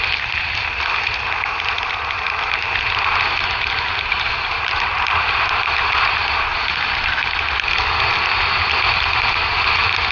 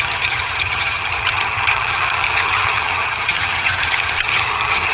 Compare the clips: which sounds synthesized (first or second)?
second